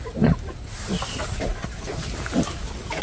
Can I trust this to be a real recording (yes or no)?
yes